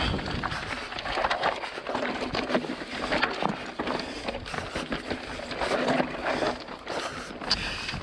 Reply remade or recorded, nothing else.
recorded